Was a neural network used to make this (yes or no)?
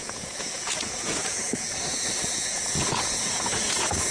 yes